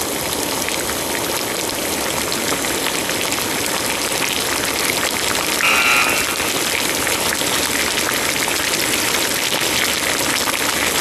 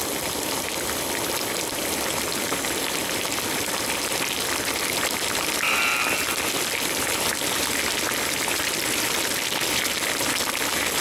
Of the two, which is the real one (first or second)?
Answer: first